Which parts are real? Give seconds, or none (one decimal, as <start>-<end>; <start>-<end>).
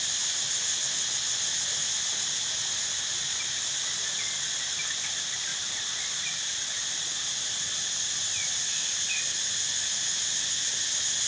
0.0-11.3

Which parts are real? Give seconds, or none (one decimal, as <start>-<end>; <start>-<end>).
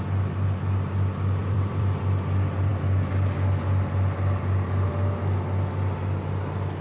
0.0-1.4; 2.0-6.8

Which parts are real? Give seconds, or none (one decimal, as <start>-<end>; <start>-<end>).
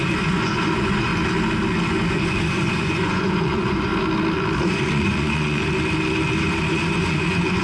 1.1-2.1; 3.9-4.6; 5.6-6.7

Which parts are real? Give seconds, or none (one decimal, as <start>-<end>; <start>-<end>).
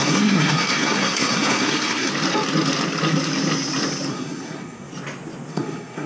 2.1-4.1; 4.9-5.5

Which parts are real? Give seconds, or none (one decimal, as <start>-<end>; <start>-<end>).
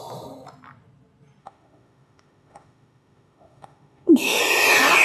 0.0-1.4; 4.4-5.0